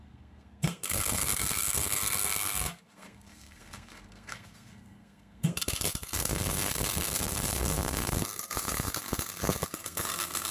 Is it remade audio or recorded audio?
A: remade